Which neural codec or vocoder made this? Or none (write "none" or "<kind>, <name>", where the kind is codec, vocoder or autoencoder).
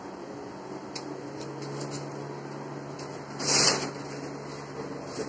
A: none